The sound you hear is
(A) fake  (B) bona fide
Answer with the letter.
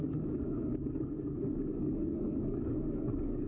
A